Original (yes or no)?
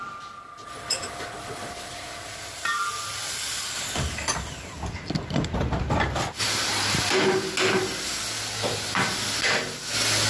yes